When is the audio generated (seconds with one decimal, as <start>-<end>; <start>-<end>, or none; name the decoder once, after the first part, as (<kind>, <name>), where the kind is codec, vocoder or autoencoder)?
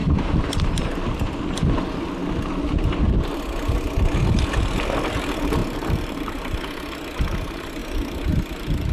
0.0-0.9 (vocoder, BigVGAN v2); 5.6-6.6